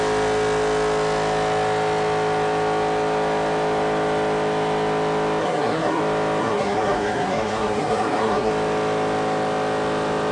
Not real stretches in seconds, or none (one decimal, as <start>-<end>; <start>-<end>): 5.4-6.0; 6.4-8.5